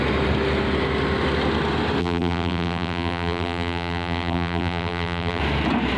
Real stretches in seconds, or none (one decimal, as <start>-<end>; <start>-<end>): 0.0-2.0; 5.4-6.0